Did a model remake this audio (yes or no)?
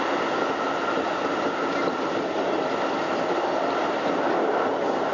no